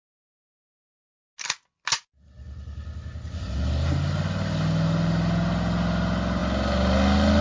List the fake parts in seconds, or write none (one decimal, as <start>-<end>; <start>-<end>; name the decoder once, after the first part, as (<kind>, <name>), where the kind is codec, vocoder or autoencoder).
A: none